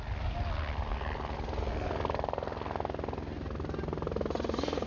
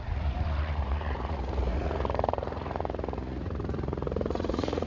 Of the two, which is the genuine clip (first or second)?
first